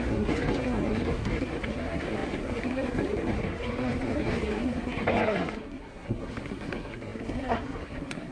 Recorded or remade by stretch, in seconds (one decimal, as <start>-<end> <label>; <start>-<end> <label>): 0.0-8.3 remade